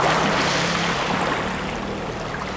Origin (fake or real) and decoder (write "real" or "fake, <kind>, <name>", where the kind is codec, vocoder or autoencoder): real